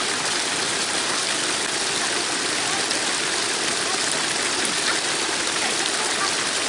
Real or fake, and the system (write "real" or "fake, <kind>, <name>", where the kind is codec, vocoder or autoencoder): real